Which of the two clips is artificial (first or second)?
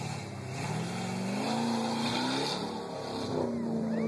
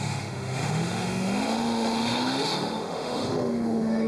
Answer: second